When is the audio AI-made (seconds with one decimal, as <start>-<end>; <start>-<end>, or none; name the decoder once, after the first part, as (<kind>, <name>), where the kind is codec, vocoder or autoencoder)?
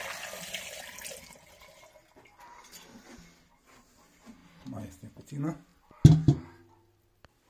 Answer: none